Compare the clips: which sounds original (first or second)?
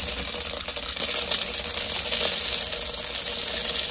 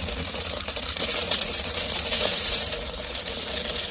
first